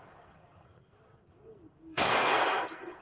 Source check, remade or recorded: remade